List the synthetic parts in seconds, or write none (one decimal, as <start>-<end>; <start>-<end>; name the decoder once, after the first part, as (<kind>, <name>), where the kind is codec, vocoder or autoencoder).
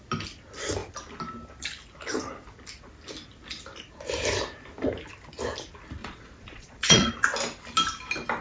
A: 6.0-7.1 (vocoder, Vocos)